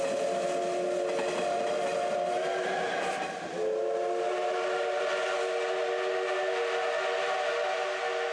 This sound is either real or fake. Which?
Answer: real